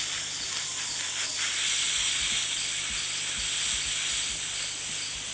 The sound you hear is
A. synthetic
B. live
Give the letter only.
B